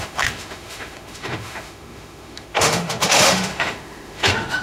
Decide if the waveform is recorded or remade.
remade